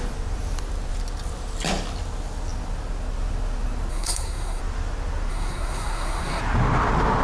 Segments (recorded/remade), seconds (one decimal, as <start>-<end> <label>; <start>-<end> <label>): 0.0-3.9 recorded; 3.9-4.6 remade; 4.6-5.3 recorded; 5.3-6.4 remade; 6.4-7.2 recorded